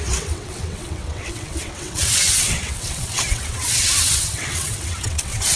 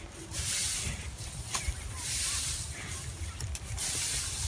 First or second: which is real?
second